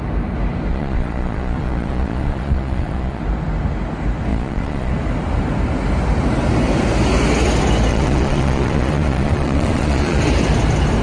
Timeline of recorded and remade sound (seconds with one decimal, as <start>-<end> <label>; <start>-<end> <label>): 0.0-0.7 recorded; 0.7-3.2 remade; 3.2-4.3 recorded; 4.3-4.9 remade; 4.9-7.9 recorded; 7.9-10.2 remade; 10.2-11.0 recorded

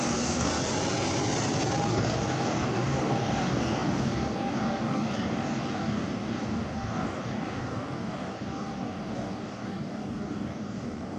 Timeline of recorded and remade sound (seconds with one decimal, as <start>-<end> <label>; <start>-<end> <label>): 0.0-0.5 remade; 0.5-1.9 recorded; 1.9-11.2 remade

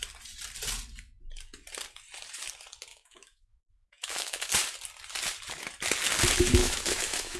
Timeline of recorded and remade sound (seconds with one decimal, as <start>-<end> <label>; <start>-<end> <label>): 0.0-2.9 recorded; 2.9-4.5 remade; 4.5-6.6 recorded; 6.6-7.4 remade

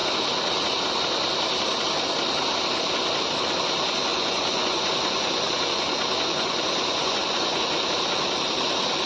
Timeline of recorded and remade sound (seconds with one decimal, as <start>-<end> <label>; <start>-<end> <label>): 0.0-4.1 recorded; 4.1-7.6 remade; 7.6-9.1 recorded

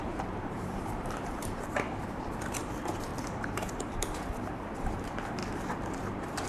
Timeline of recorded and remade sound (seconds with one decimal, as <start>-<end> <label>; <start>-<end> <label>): 0.0-3.1 remade; 3.1-3.7 recorded; 3.7-5.4 remade; 5.4-6.1 recorded; 6.1-6.5 remade